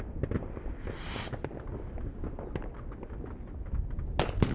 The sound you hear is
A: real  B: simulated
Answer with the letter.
A